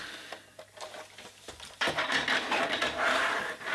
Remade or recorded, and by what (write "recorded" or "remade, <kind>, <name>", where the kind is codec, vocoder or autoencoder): remade, vocoder, BigVGAN v2